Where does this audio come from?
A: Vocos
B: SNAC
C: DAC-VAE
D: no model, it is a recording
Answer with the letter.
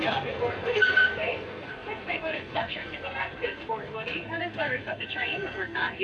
B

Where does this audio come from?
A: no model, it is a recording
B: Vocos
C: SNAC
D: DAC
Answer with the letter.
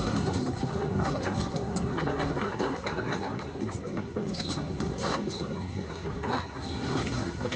C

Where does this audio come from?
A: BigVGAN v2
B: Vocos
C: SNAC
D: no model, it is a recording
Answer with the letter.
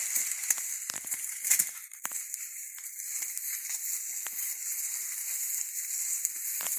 D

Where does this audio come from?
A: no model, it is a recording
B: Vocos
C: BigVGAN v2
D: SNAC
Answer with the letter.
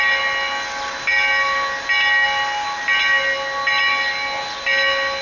A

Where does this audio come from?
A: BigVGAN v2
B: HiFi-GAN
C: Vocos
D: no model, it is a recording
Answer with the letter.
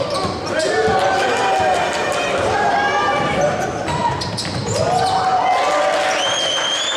D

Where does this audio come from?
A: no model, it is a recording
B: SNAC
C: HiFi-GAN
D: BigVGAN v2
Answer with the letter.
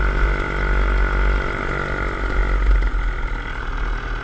A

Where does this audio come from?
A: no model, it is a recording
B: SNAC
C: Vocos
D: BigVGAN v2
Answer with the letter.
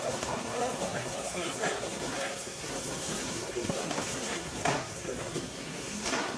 B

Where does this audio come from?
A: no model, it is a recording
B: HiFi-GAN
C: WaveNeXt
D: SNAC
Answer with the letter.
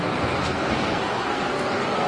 D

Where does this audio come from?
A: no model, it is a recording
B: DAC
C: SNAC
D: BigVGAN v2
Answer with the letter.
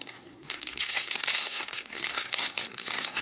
C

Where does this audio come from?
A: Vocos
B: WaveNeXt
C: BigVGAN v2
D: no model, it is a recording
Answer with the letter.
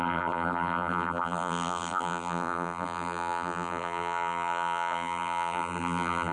C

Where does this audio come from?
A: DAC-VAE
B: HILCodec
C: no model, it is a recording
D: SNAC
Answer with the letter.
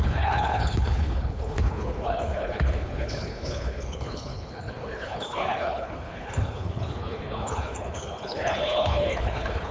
B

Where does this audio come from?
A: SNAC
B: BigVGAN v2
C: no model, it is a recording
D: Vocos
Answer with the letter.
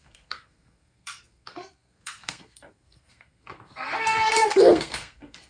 A